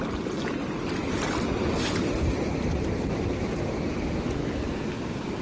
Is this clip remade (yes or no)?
no